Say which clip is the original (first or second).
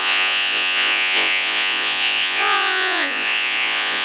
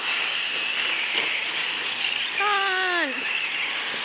second